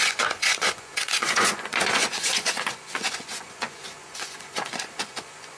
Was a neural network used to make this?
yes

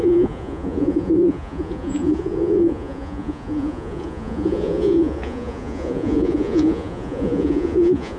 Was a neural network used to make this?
yes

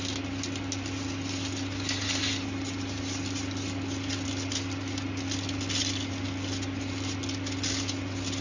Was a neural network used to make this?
no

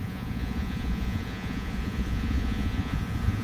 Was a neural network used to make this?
yes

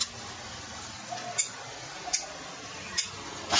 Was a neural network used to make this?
no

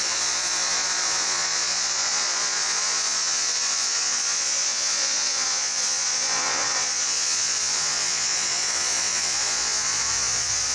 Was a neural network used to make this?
yes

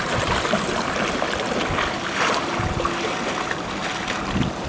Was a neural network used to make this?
no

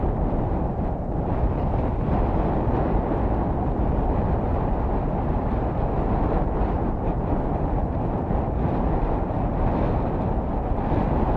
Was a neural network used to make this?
no